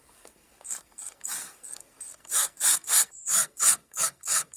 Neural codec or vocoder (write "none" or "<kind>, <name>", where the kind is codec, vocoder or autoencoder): codec, SNAC